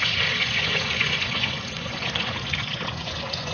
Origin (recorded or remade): remade